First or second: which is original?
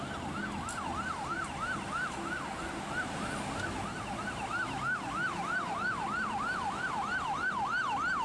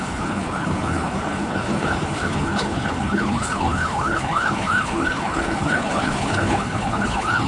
first